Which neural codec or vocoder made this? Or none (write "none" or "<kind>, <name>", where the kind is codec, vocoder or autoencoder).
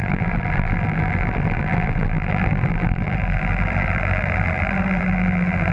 vocoder, BigVGAN v2